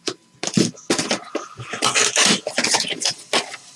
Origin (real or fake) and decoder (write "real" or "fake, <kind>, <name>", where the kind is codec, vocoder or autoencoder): real